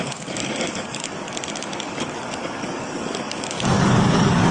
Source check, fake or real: fake